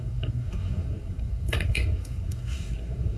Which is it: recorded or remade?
remade